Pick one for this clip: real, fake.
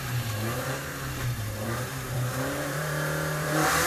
fake